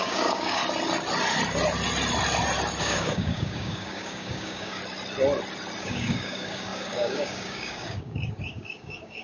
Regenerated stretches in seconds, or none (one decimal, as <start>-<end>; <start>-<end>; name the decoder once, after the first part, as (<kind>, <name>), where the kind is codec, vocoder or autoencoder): 0.0-0.6 (codec, DAC); 2.8-4.8; 5.8-9.2